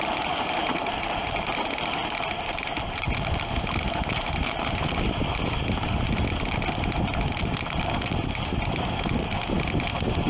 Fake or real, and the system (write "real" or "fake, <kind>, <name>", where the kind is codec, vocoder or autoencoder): real